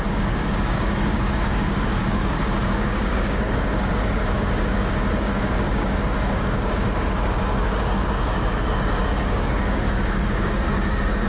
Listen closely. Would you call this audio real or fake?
fake